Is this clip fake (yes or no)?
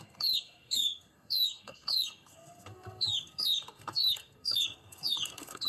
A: yes